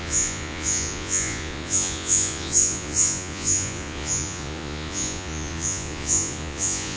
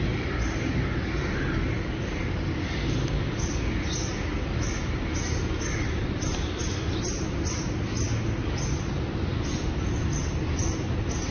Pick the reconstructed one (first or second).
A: first